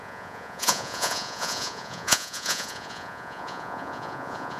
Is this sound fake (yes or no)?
yes